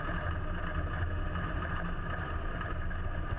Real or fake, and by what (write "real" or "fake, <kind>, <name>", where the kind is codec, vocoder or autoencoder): real